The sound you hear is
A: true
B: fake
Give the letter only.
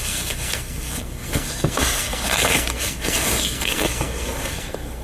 B